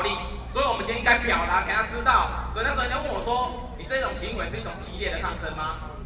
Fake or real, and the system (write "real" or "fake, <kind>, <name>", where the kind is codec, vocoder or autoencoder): real